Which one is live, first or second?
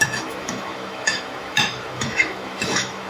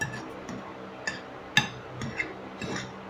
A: second